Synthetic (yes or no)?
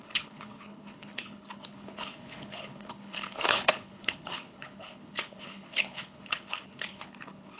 yes